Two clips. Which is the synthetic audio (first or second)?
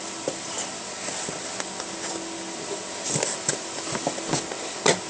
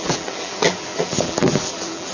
second